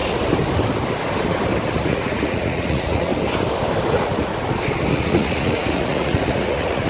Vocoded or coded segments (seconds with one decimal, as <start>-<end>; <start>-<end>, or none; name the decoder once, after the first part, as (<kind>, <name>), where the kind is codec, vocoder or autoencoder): 1.8-3.1 (vocoder, Vocos); 3.9-4.3; 4.9-6.9